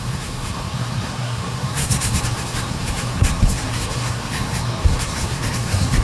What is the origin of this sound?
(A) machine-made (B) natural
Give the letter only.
A